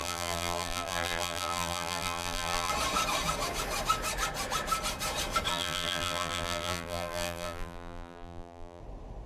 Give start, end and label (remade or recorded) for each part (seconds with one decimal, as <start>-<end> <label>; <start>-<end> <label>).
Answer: 0.0-2.7 remade; 2.7-5.5 recorded; 5.5-8.8 remade; 8.8-9.3 recorded